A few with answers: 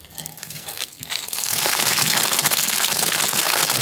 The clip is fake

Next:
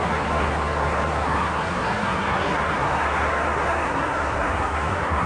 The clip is fake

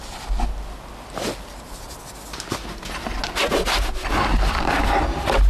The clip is real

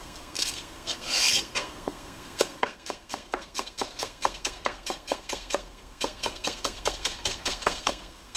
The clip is fake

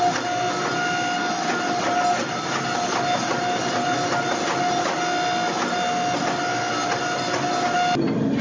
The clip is real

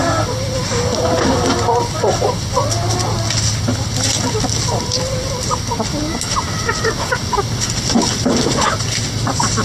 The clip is real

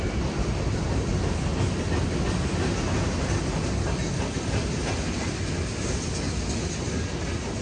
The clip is real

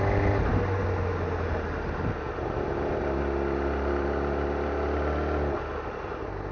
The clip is real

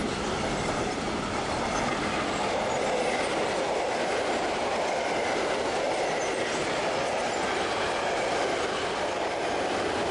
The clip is real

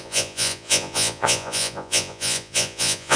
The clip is fake